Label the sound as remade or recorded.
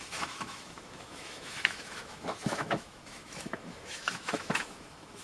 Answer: remade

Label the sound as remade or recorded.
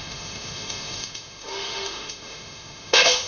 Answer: remade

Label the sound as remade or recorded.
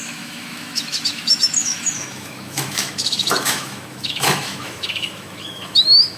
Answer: remade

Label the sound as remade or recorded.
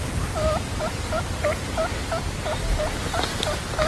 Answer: recorded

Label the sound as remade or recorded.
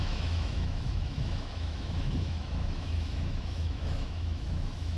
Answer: remade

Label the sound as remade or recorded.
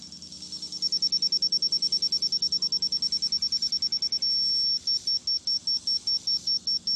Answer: recorded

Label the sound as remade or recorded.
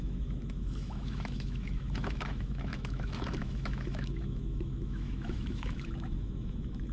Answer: remade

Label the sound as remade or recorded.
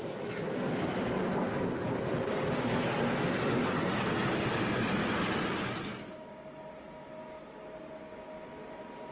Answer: recorded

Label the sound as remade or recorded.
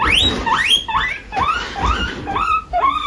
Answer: recorded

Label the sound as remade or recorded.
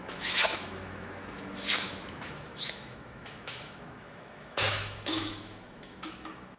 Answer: remade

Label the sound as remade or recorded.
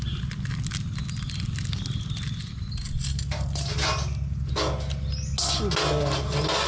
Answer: recorded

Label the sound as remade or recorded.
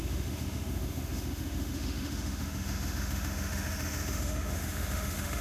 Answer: remade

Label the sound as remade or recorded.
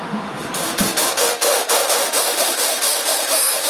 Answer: remade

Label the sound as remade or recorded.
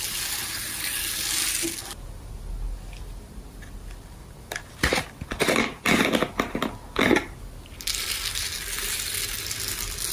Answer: recorded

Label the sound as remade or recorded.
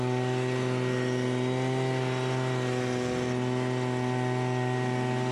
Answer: recorded